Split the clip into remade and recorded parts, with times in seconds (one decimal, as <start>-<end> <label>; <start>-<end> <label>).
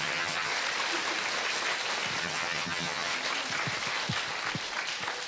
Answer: 0.0-0.5 remade; 0.5-2.2 recorded; 2.2-3.1 remade; 3.1-5.3 recorded